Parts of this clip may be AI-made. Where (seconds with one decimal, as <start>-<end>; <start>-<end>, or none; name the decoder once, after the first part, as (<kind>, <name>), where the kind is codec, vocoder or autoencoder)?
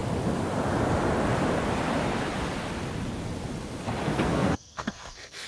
4.1-5.5 (codec, SNAC)